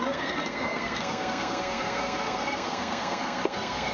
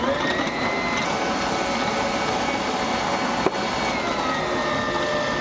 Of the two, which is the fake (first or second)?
first